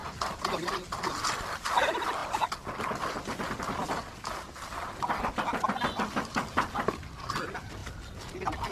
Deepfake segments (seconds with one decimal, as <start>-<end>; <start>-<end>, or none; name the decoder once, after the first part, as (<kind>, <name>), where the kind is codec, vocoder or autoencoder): none